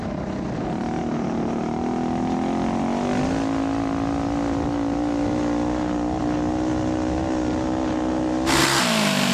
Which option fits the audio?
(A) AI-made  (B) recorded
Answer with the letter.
B